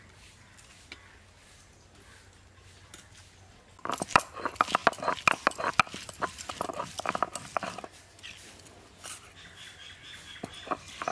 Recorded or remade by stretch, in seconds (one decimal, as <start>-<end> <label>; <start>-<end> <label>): 0.0-11.1 recorded

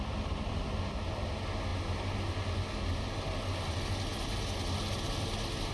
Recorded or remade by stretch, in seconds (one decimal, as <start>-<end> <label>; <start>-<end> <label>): 0.0-5.7 recorded

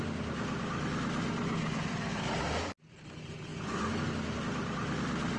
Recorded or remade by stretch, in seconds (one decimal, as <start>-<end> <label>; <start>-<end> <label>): 0.0-5.4 recorded

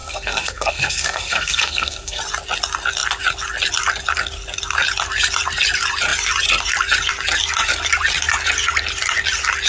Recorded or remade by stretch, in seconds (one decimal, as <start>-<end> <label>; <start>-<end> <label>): 0.0-2.2 remade; 2.2-9.7 recorded

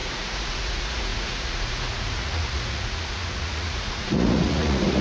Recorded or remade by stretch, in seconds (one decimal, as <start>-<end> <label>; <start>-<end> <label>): 0.0-5.0 remade

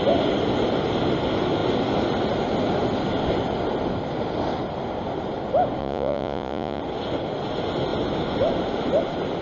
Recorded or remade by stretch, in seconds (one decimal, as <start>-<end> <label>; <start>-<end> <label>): 0.0-5.8 recorded; 5.8-6.8 remade; 6.8-9.4 recorded